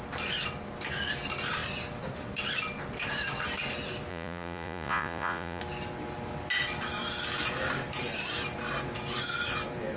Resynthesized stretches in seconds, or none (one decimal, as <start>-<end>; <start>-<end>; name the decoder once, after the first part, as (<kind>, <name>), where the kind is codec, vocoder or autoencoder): 4.1-5.6 (vocoder, Vocos)